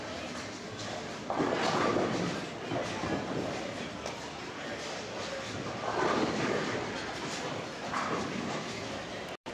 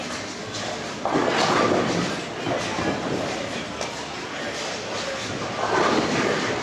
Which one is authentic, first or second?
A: second